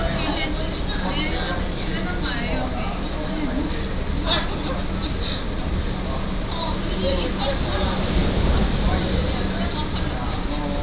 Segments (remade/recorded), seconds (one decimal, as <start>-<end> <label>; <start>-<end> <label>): 0.0-10.8 recorded